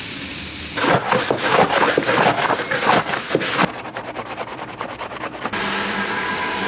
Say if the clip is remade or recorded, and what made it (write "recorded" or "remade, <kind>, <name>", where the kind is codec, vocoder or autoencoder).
recorded